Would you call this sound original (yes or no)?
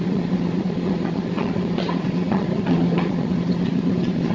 no